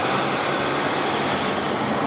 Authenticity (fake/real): real